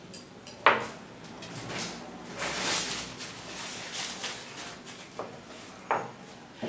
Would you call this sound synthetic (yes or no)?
no